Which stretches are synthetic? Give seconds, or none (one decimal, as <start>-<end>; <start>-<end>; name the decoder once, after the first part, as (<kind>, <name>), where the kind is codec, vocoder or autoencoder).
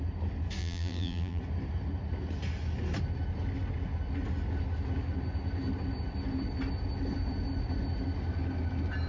0.6-1.4 (vocoder, BigVGAN v2)